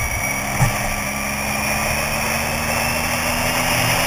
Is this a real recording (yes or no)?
yes